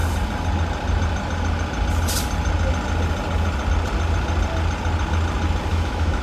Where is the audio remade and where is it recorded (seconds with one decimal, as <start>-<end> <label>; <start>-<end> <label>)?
0.0-5.7 recorded; 5.7-6.2 remade